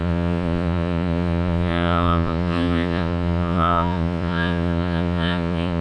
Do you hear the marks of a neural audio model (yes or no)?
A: yes